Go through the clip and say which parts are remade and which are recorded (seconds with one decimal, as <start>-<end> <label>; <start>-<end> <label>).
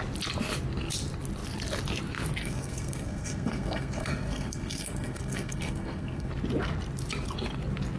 0.0-2.4 recorded; 2.4-6.3 remade; 6.3-8.0 recorded